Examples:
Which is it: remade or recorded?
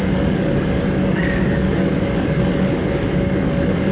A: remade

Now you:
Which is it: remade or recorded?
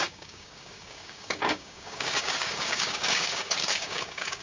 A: remade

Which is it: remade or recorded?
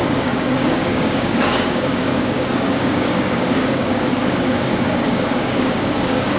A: remade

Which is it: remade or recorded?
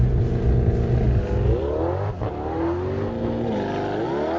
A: recorded